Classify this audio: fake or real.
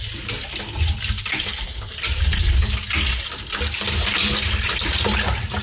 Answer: real